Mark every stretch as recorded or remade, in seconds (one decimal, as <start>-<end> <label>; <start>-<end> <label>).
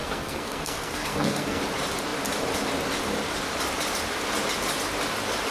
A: 0.0-1.6 remade; 1.6-5.5 recorded